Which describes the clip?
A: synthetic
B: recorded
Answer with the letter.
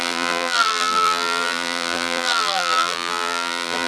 A